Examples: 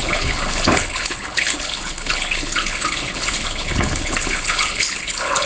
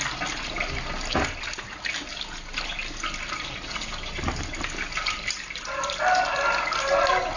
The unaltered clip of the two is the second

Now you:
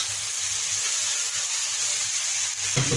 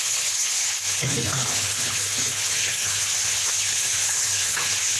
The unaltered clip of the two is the first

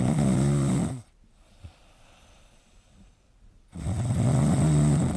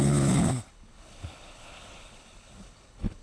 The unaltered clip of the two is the first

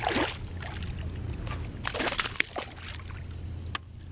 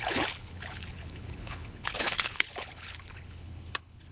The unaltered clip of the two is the first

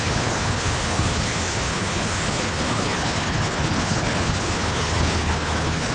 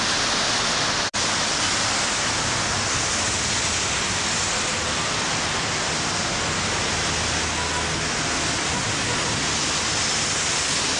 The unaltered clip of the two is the second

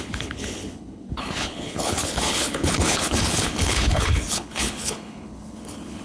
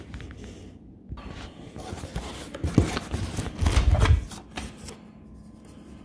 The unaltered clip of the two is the second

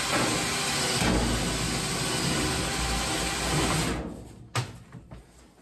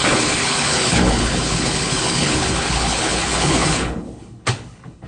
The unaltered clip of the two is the first